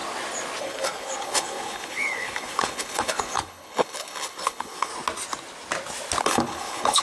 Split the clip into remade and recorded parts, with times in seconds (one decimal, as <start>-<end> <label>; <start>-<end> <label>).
0.0-0.6 recorded; 0.6-4.9 remade; 4.9-6.2 recorded; 6.2-7.0 remade